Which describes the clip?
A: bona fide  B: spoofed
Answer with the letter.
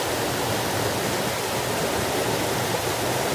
A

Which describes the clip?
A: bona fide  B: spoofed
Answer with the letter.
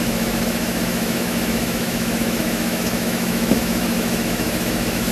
B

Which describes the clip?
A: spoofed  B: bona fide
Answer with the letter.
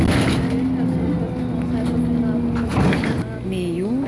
B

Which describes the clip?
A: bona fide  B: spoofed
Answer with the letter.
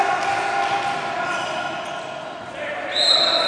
A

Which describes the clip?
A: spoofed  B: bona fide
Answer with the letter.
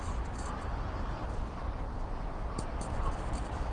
B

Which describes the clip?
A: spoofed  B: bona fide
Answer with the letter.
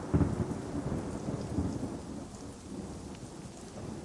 B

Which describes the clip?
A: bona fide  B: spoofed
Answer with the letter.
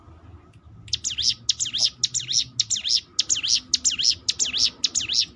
A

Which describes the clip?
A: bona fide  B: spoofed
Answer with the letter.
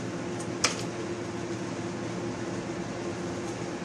A